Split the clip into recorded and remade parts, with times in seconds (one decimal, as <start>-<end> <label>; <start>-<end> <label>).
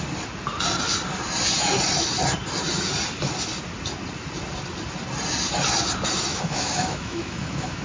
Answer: 0.0-6.3 recorded; 6.3-7.8 remade